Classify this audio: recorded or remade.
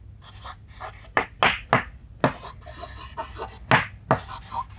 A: recorded